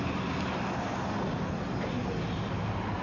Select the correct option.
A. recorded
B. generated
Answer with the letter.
A